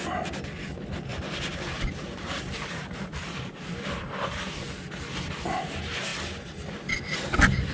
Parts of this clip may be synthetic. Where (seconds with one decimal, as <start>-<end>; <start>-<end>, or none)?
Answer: 1.1-4.5